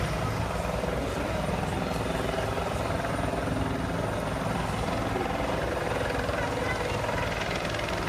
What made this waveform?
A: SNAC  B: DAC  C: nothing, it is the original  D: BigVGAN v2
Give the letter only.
C